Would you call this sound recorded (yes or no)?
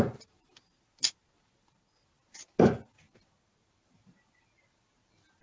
yes